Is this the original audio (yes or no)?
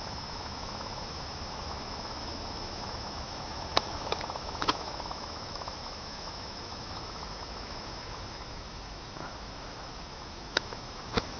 no